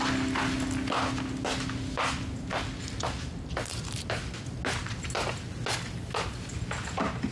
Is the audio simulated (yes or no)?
no